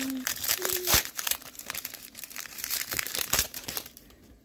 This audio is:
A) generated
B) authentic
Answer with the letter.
A